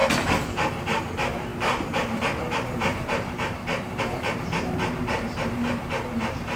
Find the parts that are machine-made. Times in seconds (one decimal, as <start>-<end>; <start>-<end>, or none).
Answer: 1.0-6.6